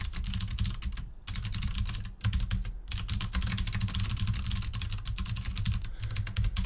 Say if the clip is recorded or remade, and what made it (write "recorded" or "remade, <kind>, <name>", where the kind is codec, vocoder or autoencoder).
recorded